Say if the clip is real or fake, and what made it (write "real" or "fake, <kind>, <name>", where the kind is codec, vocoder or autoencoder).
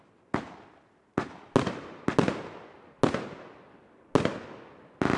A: real